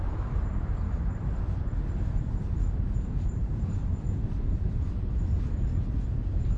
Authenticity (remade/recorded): remade